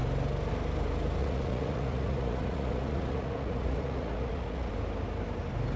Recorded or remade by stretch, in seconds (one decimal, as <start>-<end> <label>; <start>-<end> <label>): 0.0-1.2 recorded; 1.2-4.7 remade; 4.7-5.8 recorded